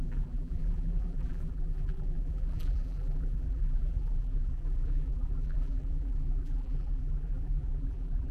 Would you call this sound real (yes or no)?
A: no